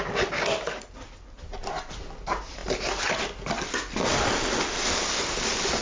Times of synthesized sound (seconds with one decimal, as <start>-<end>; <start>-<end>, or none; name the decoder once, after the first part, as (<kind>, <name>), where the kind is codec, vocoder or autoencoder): none